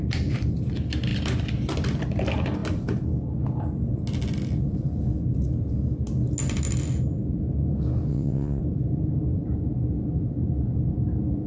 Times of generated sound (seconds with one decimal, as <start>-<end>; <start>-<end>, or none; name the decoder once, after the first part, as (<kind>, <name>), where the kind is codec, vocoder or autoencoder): 8.1-8.6 (vocoder, WaveNeXt)